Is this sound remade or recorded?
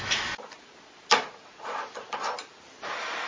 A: recorded